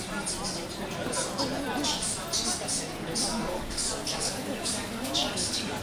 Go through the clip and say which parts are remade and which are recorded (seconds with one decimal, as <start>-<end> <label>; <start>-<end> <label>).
0.0-3.3 recorded; 3.3-5.8 remade